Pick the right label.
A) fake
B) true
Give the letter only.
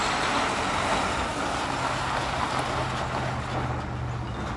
B